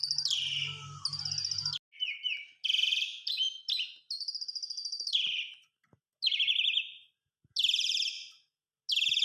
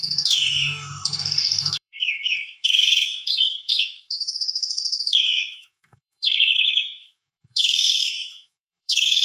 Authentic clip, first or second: first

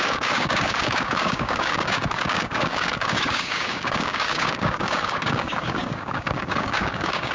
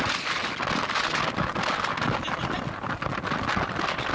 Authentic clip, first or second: second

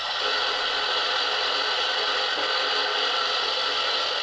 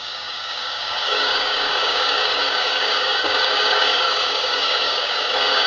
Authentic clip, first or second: first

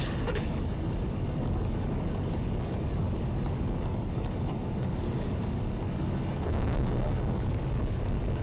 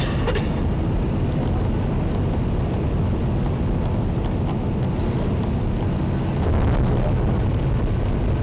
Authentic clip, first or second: second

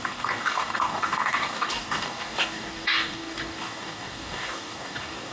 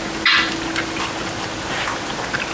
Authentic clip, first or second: second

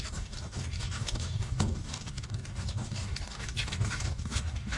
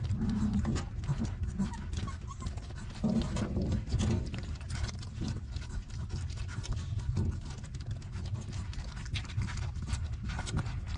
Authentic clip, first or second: second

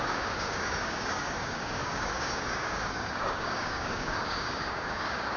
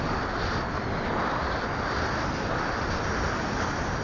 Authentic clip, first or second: second